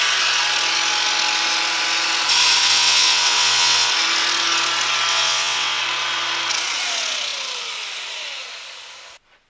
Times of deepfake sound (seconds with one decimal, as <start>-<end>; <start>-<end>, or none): 2.6-3.9; 5.1-5.8